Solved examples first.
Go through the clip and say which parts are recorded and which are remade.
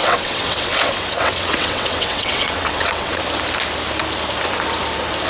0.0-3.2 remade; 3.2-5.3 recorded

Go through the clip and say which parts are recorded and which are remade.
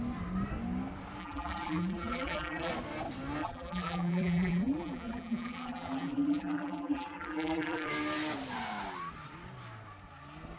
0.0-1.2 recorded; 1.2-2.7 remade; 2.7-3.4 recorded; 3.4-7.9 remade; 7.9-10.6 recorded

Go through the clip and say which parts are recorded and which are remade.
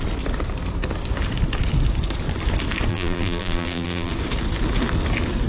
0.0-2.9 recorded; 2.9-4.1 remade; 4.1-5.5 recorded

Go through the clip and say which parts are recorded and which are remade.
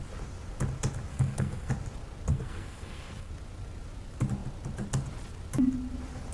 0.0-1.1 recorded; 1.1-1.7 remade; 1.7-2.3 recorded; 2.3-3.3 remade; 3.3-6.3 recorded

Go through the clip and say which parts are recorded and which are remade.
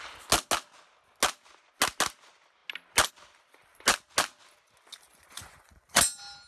0.0-5.1 recorded; 5.1-6.0 remade; 6.0-6.5 recorded